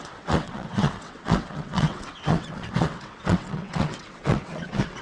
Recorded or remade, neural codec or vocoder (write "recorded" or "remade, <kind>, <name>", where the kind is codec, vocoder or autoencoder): remade, vocoder, WaveNeXt